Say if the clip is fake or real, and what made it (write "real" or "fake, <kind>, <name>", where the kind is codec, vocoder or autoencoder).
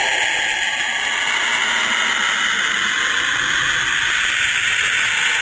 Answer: real